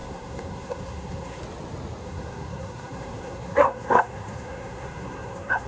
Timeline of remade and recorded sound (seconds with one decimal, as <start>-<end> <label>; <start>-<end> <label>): 0.0-1.4 remade; 1.4-2.0 recorded; 2.0-5.7 remade